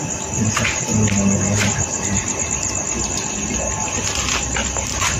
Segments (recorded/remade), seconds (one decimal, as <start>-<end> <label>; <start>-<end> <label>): 0.0-5.2 recorded